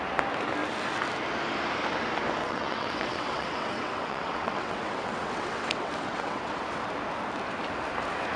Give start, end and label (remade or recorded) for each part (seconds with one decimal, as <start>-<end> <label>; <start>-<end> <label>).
0.0-2.4 recorded; 2.4-6.6 remade; 6.6-8.4 recorded